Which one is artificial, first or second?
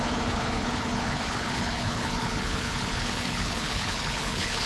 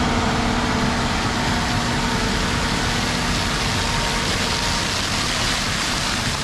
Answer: first